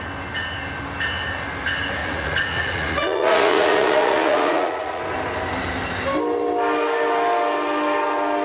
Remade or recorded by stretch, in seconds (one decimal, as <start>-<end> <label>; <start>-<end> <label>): 0.0-2.0 recorded; 2.0-5.0 remade; 5.0-8.4 recorded